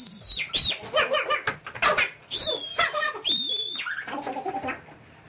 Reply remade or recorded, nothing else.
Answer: recorded